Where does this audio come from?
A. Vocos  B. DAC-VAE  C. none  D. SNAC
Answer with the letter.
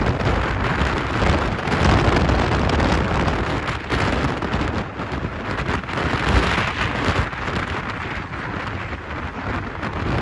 C